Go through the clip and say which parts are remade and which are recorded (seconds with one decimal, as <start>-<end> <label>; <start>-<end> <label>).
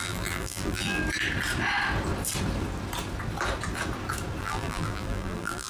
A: 0.0-1.0 remade; 1.0-4.4 recorded; 4.4-5.7 remade